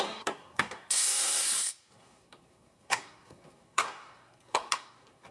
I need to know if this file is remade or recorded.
remade